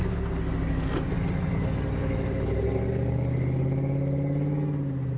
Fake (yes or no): no